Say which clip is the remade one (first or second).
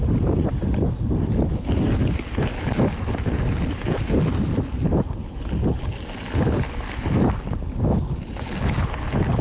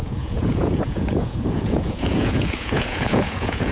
second